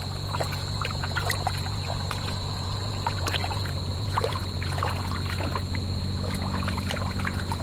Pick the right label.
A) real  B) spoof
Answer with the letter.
B